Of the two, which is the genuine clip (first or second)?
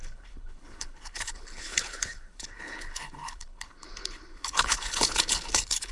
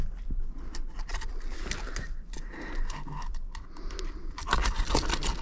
second